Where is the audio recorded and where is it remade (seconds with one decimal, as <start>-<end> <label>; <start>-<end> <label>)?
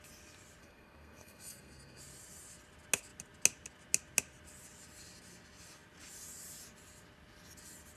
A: 0.0-0.6 recorded; 0.6-2.0 remade; 2.0-8.0 recorded